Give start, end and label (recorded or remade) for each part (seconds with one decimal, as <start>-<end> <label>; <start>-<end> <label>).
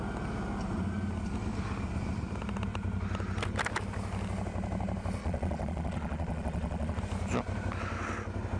0.0-5.2 recorded; 5.2-7.0 remade; 7.0-8.6 recorded